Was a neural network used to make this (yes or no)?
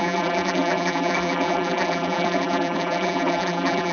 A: yes